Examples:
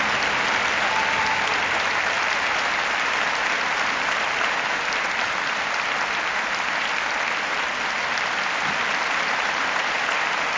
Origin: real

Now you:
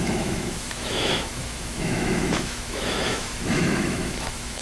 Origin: fake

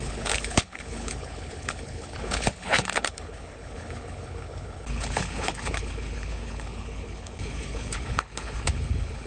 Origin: fake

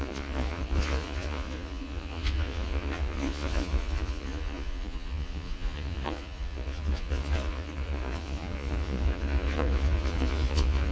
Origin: fake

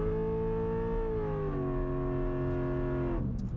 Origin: real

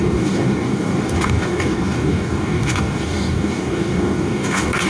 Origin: fake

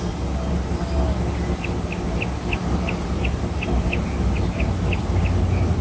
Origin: real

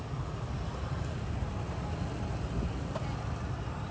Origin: real